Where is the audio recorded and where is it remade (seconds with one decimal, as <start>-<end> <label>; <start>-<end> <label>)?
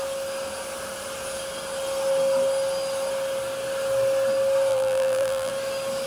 0.0-4.7 recorded; 4.7-5.5 remade; 5.5-6.1 recorded